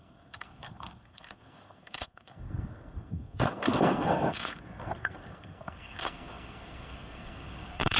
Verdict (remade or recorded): remade